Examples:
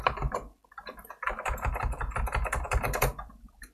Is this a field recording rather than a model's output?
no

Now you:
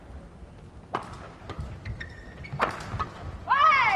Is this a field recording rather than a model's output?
yes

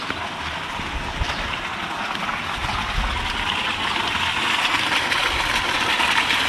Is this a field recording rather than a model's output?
yes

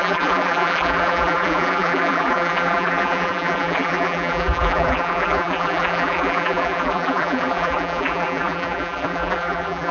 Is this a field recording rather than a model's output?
no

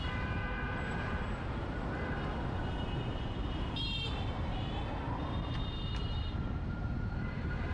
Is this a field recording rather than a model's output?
no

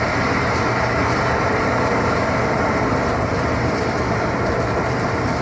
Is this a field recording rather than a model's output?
no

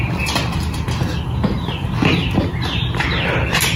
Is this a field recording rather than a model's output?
yes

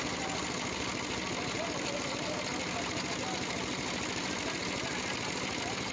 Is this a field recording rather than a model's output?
yes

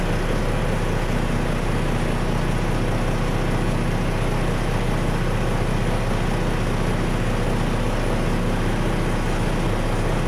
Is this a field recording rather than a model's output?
yes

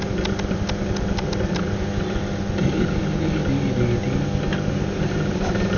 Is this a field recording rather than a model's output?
yes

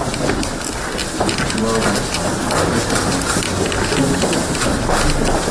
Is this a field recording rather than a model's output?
yes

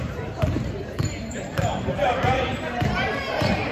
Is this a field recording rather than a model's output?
no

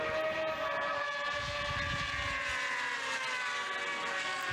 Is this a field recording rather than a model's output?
yes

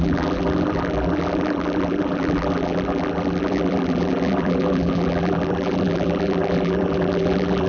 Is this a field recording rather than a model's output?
no